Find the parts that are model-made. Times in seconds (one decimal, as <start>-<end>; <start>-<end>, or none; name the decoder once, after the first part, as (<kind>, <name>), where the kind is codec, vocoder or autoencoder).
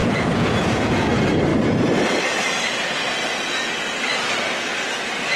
0.0-1.1 (vocoder, Vocos)